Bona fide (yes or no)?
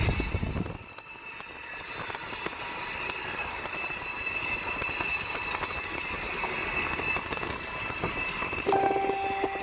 yes